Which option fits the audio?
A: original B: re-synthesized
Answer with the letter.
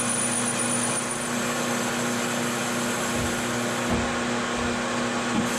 A